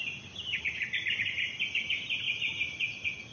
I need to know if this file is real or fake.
real